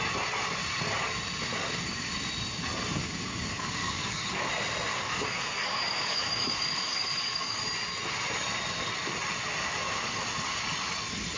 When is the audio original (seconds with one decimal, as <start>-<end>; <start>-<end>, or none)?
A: 0.0-3.0; 4.5-4.9; 7.6-11.4